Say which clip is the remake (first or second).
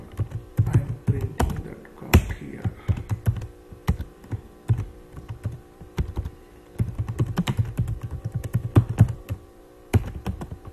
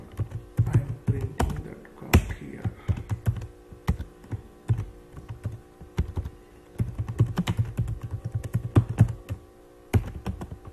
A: first